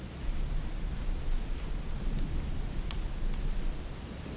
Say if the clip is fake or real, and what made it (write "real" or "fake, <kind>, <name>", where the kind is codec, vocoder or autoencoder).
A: real